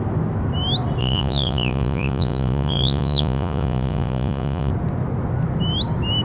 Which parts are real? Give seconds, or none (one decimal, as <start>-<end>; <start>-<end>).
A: 0.0-1.0; 4.7-6.2